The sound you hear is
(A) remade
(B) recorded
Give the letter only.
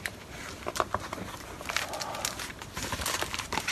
B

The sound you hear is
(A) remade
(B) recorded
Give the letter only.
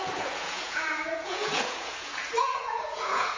A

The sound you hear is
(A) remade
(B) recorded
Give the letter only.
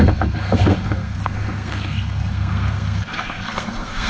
A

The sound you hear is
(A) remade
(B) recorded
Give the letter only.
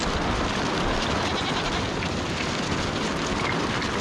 B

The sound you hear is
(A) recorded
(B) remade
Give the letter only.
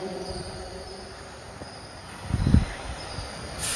B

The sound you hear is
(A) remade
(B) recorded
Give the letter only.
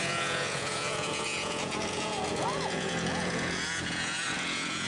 A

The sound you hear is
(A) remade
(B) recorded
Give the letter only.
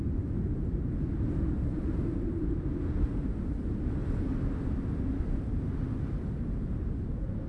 B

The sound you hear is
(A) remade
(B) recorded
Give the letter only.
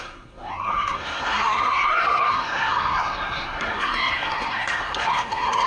A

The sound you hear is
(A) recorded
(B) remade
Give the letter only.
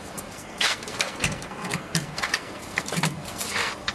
B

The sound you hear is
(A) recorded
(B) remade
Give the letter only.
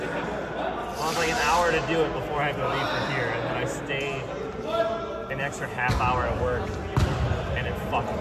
A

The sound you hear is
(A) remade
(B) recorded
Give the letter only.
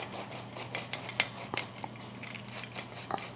B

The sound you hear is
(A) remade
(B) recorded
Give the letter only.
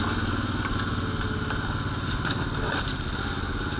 B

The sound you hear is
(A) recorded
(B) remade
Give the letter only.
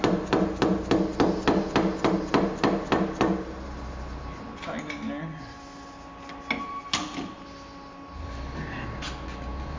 A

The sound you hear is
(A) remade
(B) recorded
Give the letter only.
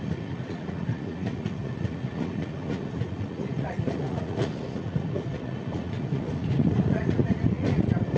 A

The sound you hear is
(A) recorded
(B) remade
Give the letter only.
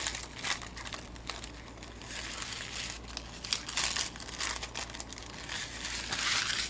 A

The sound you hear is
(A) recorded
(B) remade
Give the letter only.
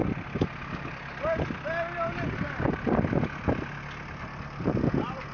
A